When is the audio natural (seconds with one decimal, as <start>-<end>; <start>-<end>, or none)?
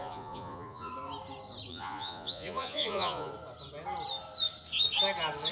0.9-1.7; 3.3-5.5